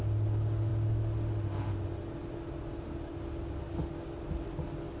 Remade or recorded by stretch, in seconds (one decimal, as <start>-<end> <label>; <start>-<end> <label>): 0.0-5.0 recorded